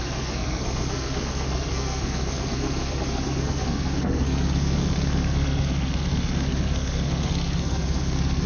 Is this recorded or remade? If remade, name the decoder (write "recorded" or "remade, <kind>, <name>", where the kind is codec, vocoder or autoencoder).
remade, codec, SNAC